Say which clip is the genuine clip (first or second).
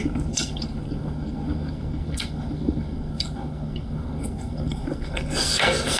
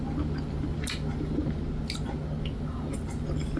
second